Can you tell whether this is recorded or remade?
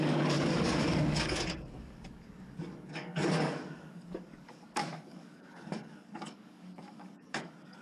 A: remade